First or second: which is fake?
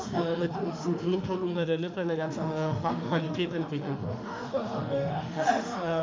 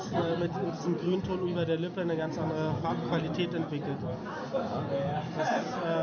first